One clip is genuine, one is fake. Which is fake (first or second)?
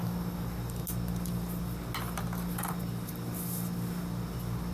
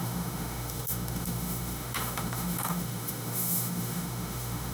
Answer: second